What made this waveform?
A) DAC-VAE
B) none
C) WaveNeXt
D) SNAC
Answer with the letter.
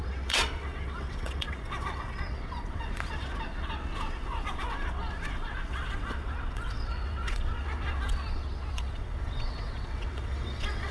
C